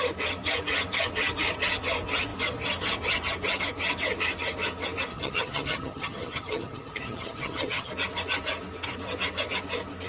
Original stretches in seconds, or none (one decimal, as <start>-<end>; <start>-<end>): 0.0-5.1; 7.9-10.1